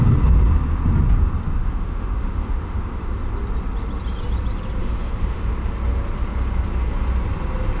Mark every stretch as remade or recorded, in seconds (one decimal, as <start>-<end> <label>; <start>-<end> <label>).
0.0-1.6 recorded; 1.6-3.2 remade; 3.2-4.8 recorded; 4.8-5.5 remade; 5.5-7.8 recorded